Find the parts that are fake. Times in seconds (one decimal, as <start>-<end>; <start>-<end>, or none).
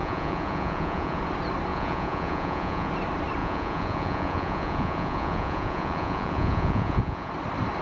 0.0-1.2; 1.7-2.9; 3.4-7.3